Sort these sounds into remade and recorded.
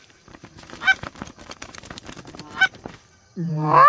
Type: remade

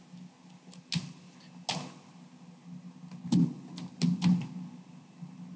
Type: recorded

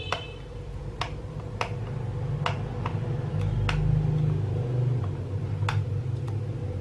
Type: recorded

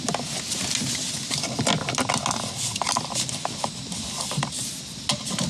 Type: recorded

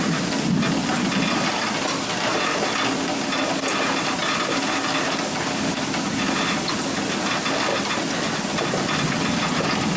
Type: recorded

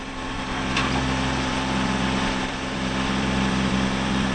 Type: remade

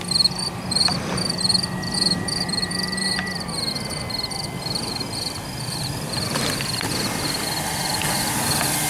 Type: remade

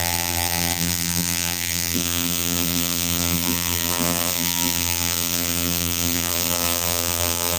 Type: remade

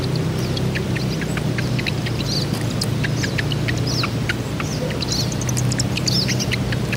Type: recorded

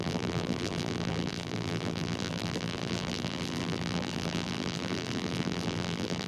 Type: remade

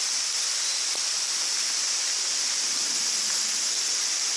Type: remade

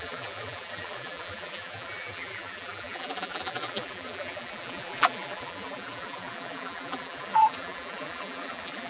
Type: remade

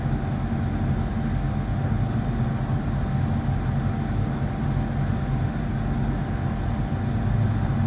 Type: recorded